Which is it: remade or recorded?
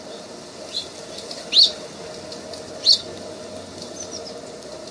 recorded